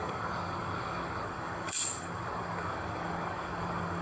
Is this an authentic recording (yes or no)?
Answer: no